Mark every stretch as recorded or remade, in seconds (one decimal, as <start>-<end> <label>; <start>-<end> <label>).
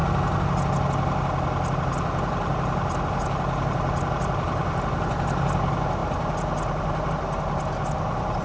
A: 0.0-8.4 recorded